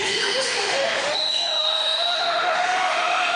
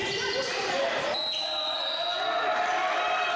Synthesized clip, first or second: first